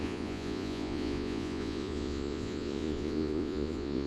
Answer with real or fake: fake